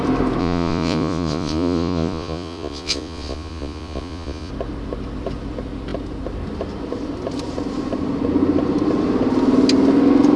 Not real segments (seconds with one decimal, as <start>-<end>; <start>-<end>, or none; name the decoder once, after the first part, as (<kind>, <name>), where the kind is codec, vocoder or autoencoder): 0.4-4.5 (vocoder, Vocos)